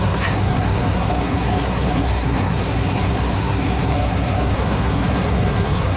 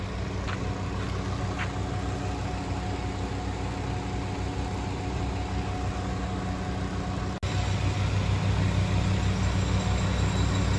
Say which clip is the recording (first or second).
second